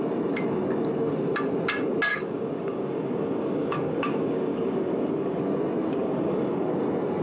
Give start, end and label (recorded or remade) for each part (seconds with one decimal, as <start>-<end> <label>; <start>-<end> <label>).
0.0-2.1 recorded; 2.1-5.4 remade; 5.4-5.9 recorded; 5.9-6.7 remade; 6.7-7.2 recorded